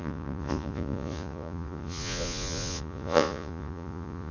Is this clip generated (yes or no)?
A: yes